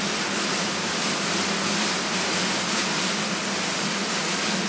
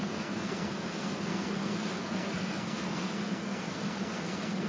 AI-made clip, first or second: second